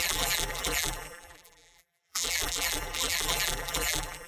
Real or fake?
fake